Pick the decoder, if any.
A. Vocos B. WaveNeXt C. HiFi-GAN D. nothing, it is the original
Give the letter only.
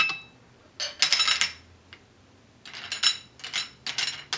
D